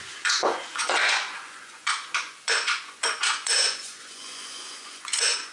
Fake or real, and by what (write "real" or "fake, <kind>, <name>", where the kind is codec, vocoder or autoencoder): fake, vocoder, Vocos